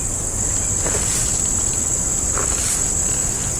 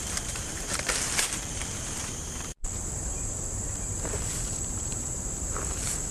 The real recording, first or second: first